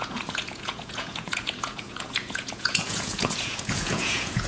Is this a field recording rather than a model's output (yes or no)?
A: no